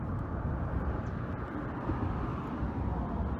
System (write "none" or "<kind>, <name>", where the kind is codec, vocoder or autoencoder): none